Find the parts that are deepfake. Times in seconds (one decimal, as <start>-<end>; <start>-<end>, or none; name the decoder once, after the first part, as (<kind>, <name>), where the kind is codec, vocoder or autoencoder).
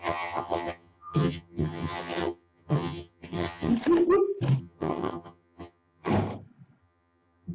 0.0-3.7 (vocoder, HiFi-GAN); 4.6-6.1; 6.8-7.5